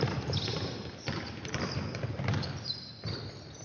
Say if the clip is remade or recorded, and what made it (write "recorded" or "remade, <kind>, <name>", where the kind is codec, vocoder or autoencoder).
remade, vocoder, BigVGAN v2